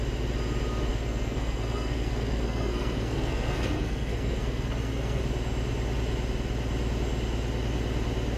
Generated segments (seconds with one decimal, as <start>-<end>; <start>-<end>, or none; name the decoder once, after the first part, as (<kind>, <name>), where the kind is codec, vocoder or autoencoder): 0.9-5.2 (codec, SNAC)